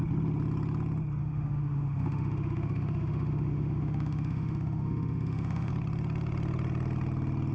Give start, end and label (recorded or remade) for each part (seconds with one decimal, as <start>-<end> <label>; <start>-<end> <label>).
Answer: 0.0-1.2 recorded; 1.2-5.7 remade; 5.7-7.5 recorded